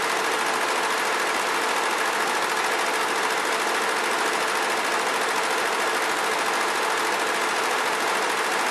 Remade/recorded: recorded